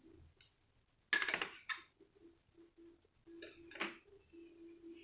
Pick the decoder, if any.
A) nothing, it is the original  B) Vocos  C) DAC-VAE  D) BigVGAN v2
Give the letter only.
A